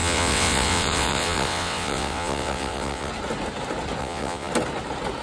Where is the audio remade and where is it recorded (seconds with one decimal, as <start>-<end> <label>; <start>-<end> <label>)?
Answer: 0.0-3.1 remade; 3.1-4.0 recorded; 4.0-4.5 remade; 4.5-5.2 recorded